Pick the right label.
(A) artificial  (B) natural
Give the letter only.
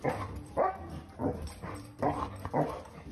A